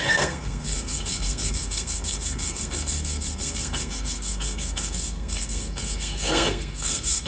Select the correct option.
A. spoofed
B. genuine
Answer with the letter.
A